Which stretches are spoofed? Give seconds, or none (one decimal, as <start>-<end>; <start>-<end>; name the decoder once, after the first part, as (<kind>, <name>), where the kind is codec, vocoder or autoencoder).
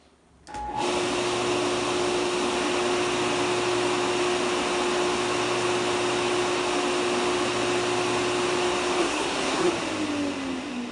9.0-9.7 (codec, SNAC)